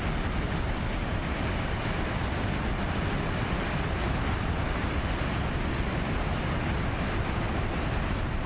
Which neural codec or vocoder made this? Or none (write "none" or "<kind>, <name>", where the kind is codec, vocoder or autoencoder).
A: none